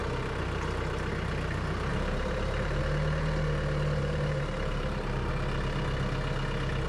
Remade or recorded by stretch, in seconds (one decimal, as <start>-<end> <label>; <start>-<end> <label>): 0.0-1.9 recorded; 1.9-2.8 remade; 2.8-4.0 recorded; 4.0-5.3 remade; 5.3-6.9 recorded